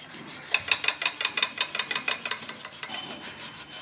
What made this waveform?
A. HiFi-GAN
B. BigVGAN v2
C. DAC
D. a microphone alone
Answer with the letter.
D